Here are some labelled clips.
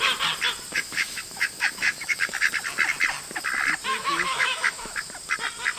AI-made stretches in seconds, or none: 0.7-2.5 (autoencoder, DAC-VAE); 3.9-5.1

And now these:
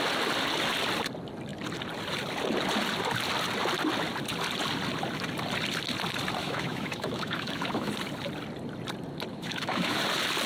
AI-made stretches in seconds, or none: 6.4-7.9 (autoencoder, DAC-VAE); 9.3-10.0